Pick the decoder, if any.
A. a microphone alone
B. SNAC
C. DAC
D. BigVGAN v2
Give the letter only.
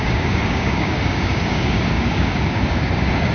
C